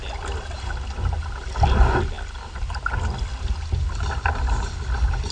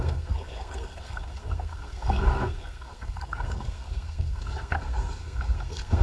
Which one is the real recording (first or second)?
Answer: first